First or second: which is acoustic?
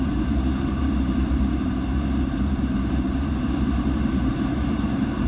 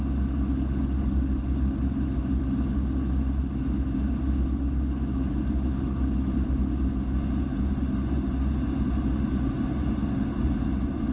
second